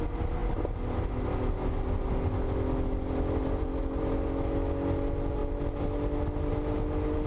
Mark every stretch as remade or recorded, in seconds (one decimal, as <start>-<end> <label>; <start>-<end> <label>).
0.0-7.3 recorded